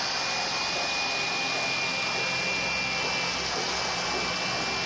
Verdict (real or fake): real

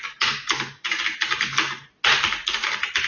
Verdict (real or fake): real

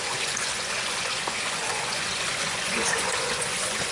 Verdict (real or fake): fake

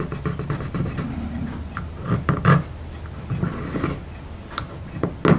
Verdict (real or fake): real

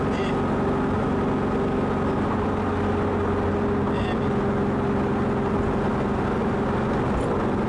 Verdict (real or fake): real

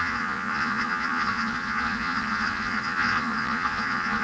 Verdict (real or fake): fake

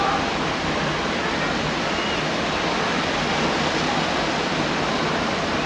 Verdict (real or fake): real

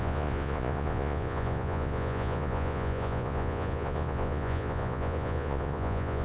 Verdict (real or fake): fake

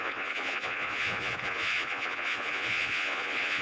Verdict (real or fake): fake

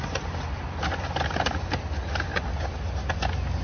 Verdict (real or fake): real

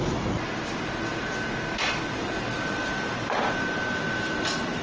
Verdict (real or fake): real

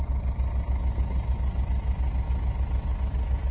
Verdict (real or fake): real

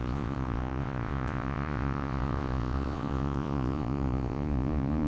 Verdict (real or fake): fake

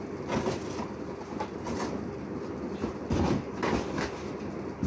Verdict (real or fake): real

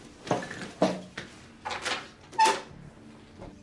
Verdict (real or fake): real